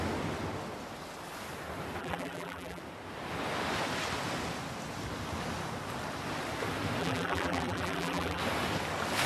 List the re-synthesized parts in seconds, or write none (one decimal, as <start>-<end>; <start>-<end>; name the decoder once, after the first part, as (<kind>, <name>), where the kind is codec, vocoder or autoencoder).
2.0-2.8 (vocoder, BigVGAN v2); 7.0-8.4

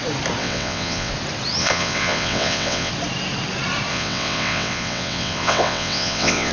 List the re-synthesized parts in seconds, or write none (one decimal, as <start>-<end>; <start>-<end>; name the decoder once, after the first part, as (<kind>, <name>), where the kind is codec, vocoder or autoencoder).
0.4-1.1 (vocoder, WaveNeXt); 1.6-2.9; 3.9-6.5

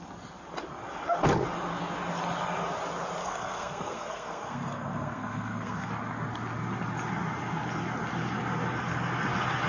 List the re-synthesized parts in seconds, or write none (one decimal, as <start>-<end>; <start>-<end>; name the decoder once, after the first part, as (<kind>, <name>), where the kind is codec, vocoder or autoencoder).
3.2-5.9 (codec, SNAC)

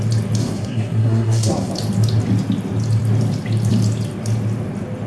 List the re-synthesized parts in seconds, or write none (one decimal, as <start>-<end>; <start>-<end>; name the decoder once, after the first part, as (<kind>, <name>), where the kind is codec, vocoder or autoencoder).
0.4-1.7 (codec, SNAC)

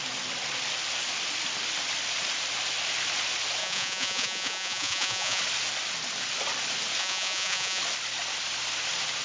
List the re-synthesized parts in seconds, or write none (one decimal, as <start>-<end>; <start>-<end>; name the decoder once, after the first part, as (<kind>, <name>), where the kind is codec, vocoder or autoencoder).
3.6-5.4 (vocoder, Vocos); 7.0-7.8

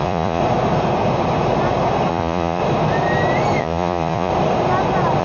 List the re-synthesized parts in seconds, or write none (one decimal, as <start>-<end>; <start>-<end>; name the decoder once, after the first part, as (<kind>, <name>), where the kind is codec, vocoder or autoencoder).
0.0-0.4 (vocoder, Vocos); 2.1-2.6; 3.6-4.3